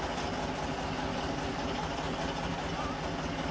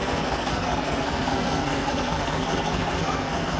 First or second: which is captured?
first